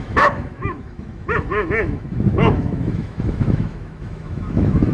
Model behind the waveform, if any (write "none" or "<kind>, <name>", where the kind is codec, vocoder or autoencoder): autoencoder, DAC-VAE